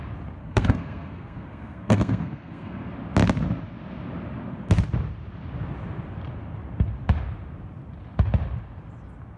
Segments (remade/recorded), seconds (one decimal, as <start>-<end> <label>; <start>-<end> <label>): 0.0-0.4 recorded; 0.4-2.9 remade; 2.9-9.4 recorded